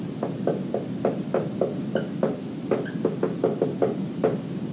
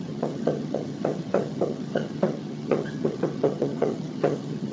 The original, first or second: first